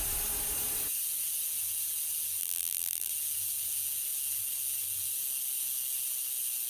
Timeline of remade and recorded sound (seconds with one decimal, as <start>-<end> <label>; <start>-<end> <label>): 0.0-2.4 recorded; 2.4-3.1 remade; 3.1-6.7 recorded